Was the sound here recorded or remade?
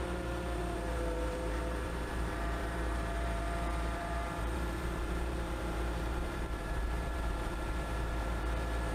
remade